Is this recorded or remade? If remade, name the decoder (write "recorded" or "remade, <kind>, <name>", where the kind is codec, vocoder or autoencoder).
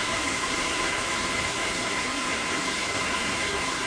remade, codec, SNAC